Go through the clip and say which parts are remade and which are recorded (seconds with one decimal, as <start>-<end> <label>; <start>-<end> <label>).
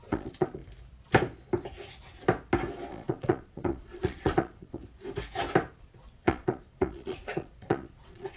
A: 0.0-0.6 remade; 0.6-2.9 recorded; 2.9-4.8 remade; 4.8-5.8 recorded; 5.8-8.4 remade